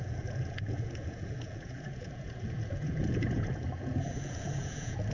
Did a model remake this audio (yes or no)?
yes